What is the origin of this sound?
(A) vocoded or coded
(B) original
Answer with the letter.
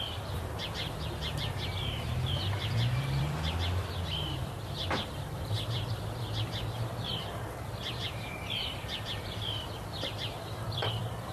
A